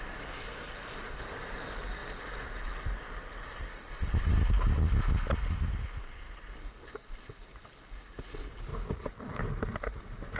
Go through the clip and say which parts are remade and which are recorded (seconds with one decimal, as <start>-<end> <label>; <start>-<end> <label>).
0.0-10.4 recorded